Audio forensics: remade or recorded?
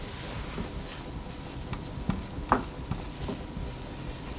recorded